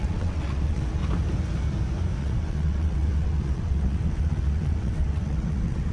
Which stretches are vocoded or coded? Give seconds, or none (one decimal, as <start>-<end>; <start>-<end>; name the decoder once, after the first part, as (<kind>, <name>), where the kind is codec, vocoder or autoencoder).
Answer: 0.0-1.0 (vocoder, WaveNeXt); 2.2-5.9